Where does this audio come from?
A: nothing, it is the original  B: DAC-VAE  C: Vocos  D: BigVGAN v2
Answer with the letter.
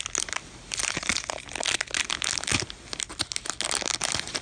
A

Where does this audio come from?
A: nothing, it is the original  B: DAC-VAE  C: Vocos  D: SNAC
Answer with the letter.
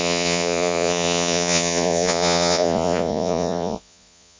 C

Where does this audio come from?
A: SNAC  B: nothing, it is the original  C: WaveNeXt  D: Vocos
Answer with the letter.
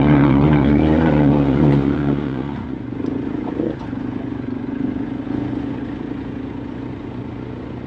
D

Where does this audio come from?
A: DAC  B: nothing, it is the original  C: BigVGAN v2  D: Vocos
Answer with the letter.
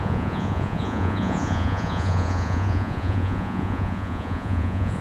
D